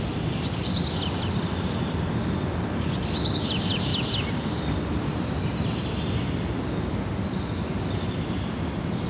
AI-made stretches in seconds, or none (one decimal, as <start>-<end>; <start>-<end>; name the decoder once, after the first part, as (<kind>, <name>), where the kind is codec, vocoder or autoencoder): none